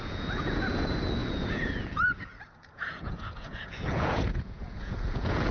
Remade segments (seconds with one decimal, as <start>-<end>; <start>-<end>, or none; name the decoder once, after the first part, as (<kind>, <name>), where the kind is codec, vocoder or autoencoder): 0.0-5.5 (vocoder, Vocos)